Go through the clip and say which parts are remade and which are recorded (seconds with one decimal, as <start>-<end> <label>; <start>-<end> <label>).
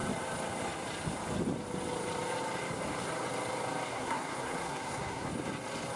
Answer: 0.0-3.9 recorded; 3.9-5.3 remade; 5.3-6.0 recorded